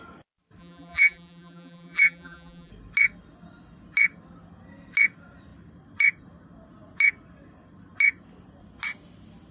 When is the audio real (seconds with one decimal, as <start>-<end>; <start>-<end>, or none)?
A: 0.0-0.6; 2.7-9.5